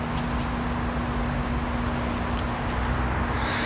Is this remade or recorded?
recorded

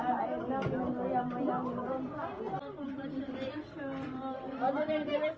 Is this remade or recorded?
recorded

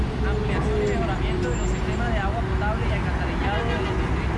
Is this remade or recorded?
recorded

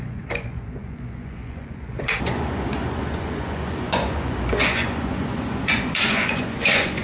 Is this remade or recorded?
remade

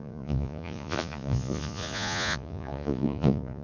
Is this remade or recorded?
remade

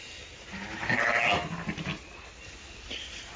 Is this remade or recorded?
recorded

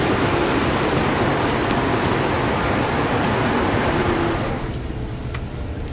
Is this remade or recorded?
recorded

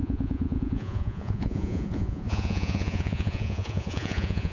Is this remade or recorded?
remade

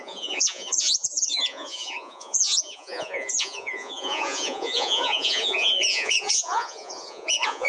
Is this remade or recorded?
remade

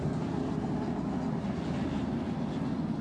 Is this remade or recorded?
recorded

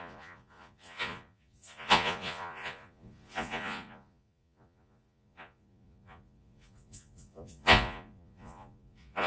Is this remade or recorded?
remade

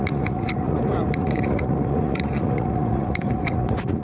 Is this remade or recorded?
remade